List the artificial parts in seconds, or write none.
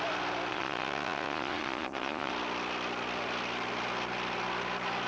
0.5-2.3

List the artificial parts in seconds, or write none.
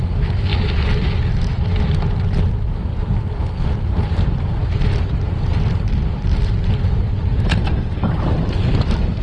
none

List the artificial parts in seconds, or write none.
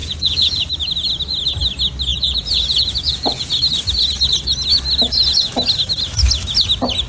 0.0-0.6; 2.1-3.5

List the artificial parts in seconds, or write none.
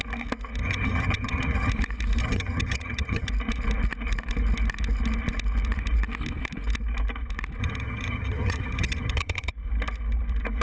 0.6-1.7; 2.2-3.3; 7.6-9.5